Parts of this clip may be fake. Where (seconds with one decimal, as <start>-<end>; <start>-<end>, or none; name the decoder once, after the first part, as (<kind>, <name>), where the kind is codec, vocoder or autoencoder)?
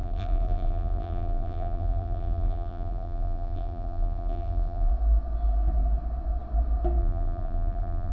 0.0-4.9 (vocoder, BigVGAN v2); 7.0-8.1